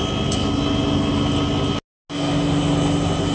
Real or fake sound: real